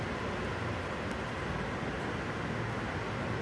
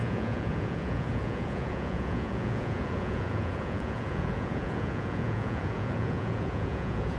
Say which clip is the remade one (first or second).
second